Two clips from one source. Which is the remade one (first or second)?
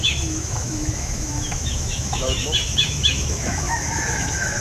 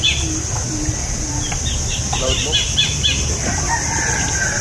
first